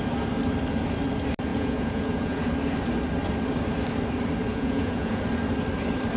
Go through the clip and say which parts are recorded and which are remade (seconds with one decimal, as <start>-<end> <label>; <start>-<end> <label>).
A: 0.0-1.5 recorded; 1.5-2.4 remade; 2.4-4.5 recorded; 4.5-5.2 remade; 5.2-6.2 recorded